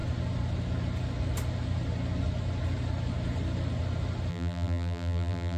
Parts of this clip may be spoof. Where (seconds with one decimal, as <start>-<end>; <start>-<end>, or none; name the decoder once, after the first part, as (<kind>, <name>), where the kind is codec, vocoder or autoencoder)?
4.3-5.6 (vocoder, BigVGAN v2)